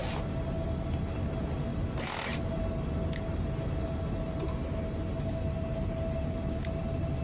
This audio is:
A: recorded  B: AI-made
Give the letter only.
A